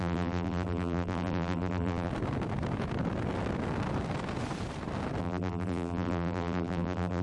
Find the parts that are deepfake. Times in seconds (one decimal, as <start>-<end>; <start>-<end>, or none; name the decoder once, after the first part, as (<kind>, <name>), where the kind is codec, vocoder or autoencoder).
0.0-2.1 (vocoder, BigVGAN v2); 5.2-7.2